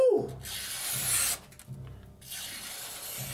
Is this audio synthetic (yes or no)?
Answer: no